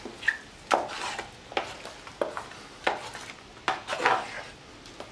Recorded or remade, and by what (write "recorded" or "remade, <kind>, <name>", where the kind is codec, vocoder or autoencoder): recorded